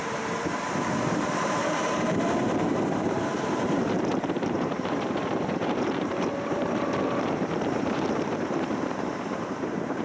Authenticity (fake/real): fake